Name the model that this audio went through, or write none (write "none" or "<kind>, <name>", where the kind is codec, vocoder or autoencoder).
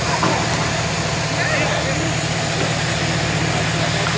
none